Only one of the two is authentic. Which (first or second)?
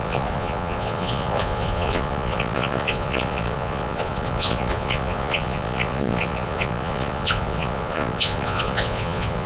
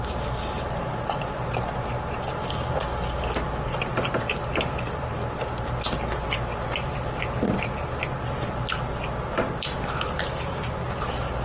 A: second